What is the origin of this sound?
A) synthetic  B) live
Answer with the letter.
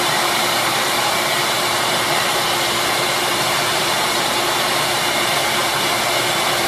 A